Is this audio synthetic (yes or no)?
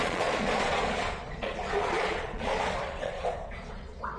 yes